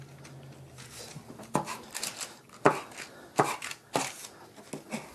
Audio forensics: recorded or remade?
recorded